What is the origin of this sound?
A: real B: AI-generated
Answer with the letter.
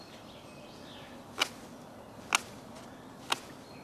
A